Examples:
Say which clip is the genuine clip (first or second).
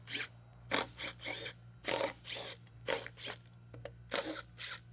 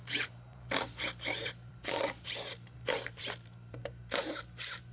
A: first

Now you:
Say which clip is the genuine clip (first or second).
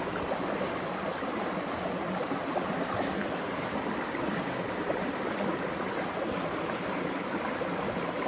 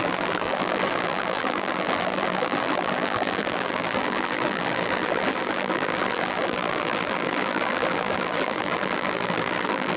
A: first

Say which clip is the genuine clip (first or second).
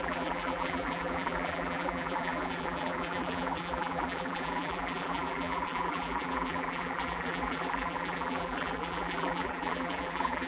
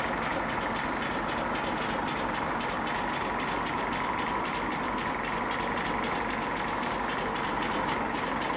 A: second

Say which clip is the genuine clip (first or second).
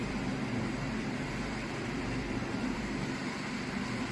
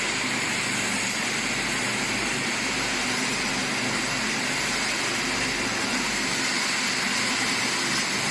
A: second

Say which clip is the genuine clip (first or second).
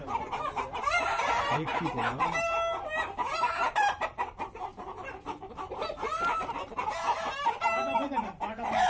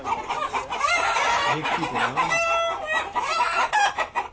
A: second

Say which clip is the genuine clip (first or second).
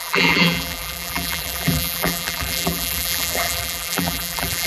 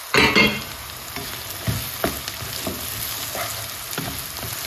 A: second